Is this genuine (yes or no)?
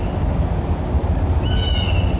yes